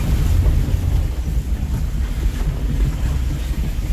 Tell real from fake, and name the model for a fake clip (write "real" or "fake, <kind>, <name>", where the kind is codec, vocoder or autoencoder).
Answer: real